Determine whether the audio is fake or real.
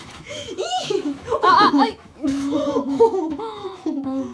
fake